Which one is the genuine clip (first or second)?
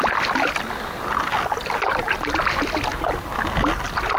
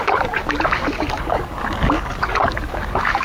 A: first